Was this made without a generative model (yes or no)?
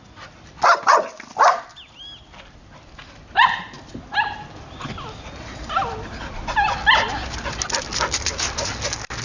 yes